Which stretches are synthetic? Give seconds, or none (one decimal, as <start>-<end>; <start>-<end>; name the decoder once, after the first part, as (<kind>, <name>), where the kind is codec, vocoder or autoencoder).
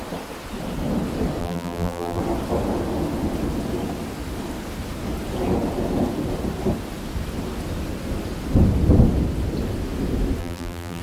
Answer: 1.4-2.2 (vocoder, BigVGAN v2); 10.4-11.0